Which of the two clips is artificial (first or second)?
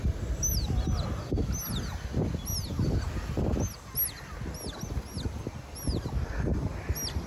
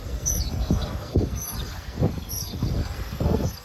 second